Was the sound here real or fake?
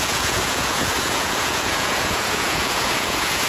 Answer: fake